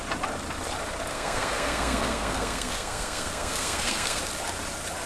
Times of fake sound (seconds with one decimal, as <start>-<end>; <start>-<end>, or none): 1.1-4.2